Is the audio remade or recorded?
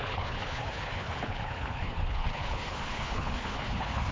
remade